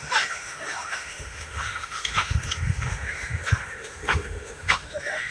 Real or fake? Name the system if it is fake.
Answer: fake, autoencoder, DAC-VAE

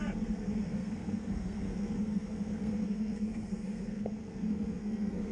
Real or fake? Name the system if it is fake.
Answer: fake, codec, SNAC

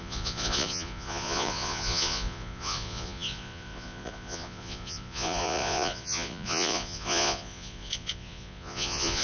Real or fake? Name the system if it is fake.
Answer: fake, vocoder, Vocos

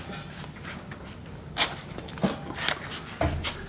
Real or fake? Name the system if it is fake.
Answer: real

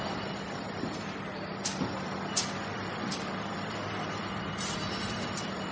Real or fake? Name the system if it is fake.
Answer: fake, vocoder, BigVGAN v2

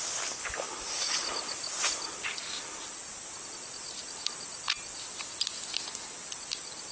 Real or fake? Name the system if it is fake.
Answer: real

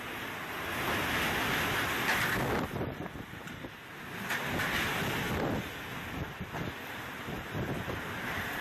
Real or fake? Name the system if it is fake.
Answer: real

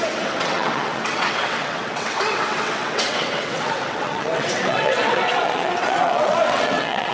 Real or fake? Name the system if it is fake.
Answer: fake, vocoder, WaveNeXt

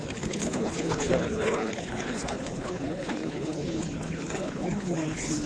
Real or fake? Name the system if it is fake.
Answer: fake, codec, HILCodec